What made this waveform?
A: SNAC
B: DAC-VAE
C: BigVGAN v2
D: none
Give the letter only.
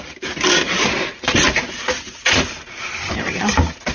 C